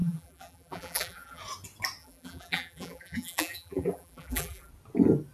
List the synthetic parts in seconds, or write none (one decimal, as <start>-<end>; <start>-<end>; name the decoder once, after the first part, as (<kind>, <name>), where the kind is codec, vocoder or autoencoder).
0.0-1.4 (vocoder, BigVGAN v2); 2.0-4.7